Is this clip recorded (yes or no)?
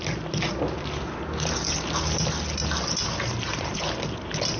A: yes